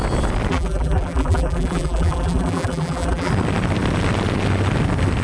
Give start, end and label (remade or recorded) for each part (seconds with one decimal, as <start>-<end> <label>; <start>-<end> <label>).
0.0-0.5 recorded; 0.5-3.3 remade; 3.3-5.2 recorded